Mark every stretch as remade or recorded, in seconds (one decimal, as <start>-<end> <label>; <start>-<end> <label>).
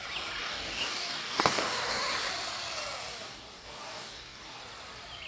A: 0.0-0.4 recorded; 0.4-2.0 remade; 2.0-3.1 recorded; 3.1-4.6 remade; 4.6-5.3 recorded